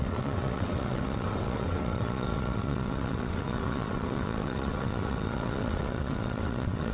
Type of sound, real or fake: fake